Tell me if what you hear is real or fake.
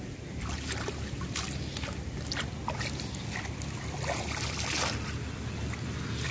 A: real